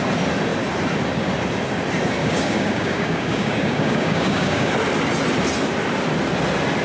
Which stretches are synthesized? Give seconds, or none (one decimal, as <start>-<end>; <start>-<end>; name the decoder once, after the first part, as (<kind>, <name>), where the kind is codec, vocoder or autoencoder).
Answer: 2.2-4.7 (codec, DAC)